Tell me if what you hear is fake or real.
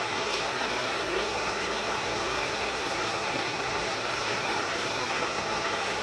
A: fake